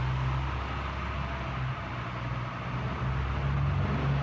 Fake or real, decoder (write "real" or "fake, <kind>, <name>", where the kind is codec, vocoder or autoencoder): real